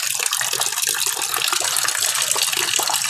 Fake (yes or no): no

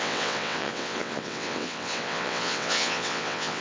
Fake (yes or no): yes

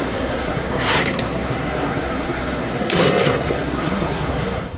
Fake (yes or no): yes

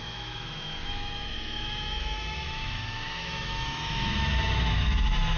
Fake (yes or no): yes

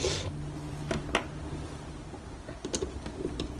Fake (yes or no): no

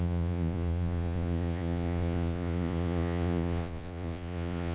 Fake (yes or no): yes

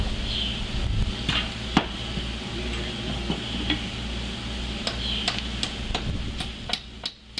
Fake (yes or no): no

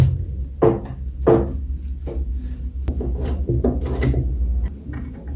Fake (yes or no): no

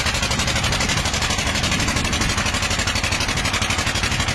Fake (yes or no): no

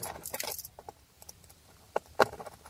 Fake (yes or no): no